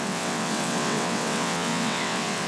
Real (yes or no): no